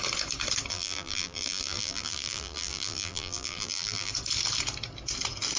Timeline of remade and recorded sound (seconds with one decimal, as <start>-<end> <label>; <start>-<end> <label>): 0.0-0.7 recorded; 0.7-4.1 remade; 4.1-5.6 recorded

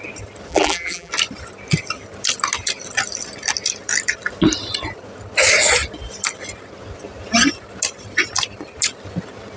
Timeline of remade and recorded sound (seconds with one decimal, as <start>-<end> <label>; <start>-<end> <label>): 0.0-0.5 recorded; 0.5-1.1 remade; 1.1-9.6 recorded

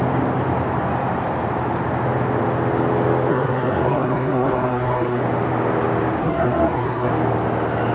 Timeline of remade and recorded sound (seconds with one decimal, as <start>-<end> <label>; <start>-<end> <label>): 0.0-3.3 recorded; 3.3-5.2 remade; 5.2-6.2 recorded; 6.2-7.1 remade; 7.1-7.9 recorded

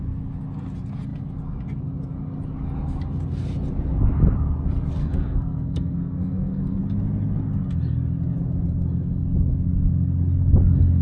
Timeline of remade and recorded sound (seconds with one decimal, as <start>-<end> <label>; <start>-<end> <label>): 0.0-5.0 recorded; 5.0-6.8 remade; 6.8-11.0 recorded